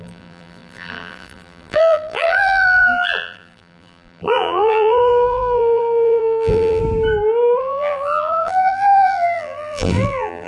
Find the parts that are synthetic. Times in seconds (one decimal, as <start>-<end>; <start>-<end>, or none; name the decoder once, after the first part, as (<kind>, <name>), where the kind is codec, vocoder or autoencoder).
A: 0.0-6.8 (vocoder, BigVGAN v2); 7.6-10.5